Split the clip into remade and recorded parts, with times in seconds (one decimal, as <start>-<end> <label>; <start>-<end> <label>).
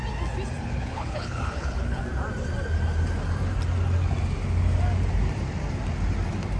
0.0-0.6 recorded; 0.6-2.0 remade; 2.0-6.6 recorded